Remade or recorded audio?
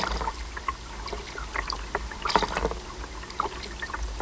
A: recorded